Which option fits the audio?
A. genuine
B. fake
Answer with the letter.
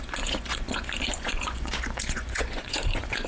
B